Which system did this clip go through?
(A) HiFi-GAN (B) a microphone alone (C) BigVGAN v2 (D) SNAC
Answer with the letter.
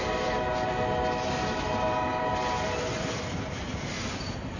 B